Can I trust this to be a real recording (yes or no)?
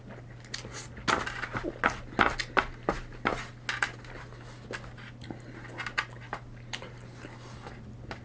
yes